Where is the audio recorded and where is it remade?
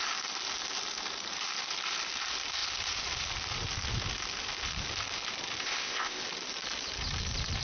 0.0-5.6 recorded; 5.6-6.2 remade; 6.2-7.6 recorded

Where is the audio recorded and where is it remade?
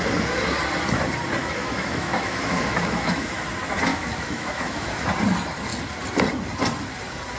0.0-1.4 recorded; 1.4-3.4 remade; 3.4-3.9 recorded; 3.9-4.9 remade; 4.9-7.4 recorded